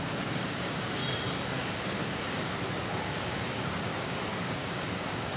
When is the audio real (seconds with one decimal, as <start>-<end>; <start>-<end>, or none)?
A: 1.0-1.5